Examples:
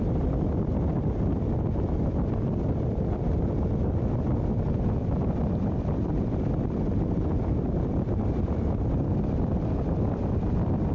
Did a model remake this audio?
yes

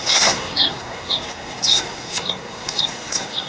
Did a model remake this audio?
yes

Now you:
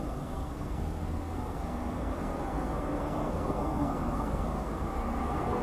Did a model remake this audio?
yes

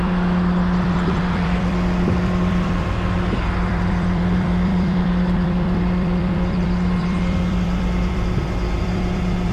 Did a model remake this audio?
yes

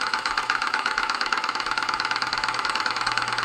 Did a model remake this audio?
yes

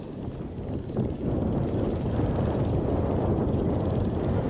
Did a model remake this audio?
no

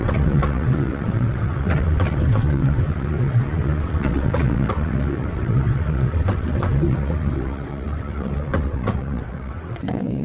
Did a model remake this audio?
yes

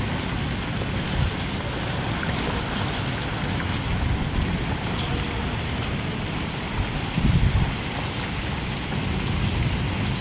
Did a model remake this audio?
no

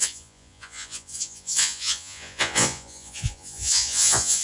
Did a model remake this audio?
yes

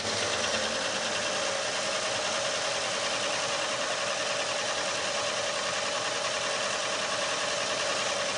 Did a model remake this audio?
no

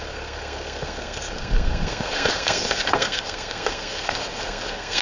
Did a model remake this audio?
yes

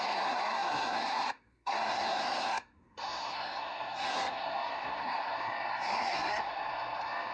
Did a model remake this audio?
yes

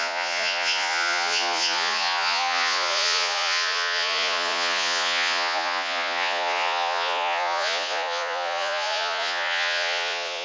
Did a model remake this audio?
yes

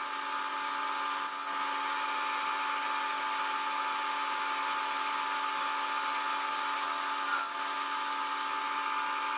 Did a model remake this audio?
no